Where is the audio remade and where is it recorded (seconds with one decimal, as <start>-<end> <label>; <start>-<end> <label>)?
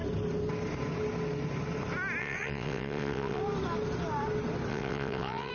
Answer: 0.0-2.2 recorded; 2.2-3.4 remade; 3.4-4.7 recorded; 4.7-5.5 remade